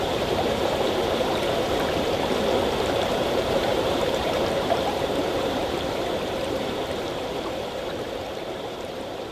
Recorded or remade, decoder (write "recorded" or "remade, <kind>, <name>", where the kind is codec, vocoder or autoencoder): remade, vocoder, BigVGAN v2